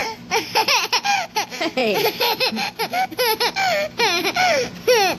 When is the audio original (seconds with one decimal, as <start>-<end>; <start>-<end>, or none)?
0.0-1.8; 2.8-5.2